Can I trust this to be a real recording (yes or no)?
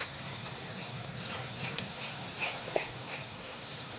no